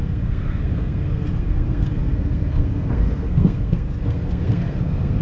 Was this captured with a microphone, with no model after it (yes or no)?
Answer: no